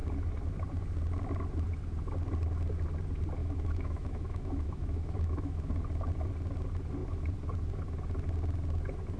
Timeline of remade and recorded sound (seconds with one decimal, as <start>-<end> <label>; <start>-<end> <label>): 0.0-3.4 recorded; 3.4-5.7 remade; 5.7-9.2 recorded